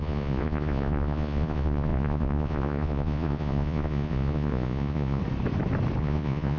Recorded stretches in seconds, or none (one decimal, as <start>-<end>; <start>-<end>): 5.2-6.0